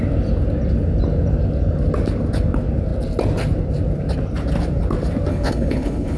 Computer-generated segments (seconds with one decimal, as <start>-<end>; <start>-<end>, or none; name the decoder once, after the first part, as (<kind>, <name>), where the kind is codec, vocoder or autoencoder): 5.3-6.2 (codec, HILCodec)